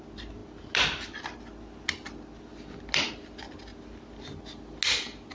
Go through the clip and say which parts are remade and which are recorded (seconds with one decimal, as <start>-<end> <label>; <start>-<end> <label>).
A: 0.0-3.7 remade; 3.7-5.3 recorded